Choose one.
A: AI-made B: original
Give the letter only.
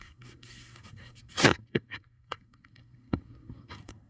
A